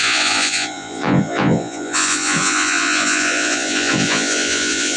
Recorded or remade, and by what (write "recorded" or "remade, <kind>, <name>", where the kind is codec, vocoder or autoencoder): remade, vocoder, Vocos